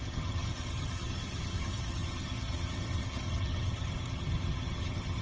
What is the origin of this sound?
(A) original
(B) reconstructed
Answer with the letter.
B